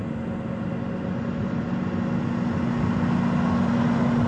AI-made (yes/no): no